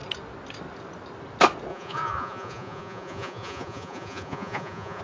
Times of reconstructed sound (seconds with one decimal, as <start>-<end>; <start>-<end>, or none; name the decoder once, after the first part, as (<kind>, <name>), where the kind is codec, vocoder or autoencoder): 1.7-5.0 (vocoder, Vocos)